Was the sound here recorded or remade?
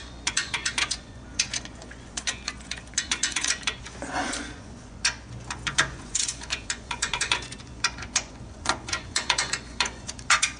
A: remade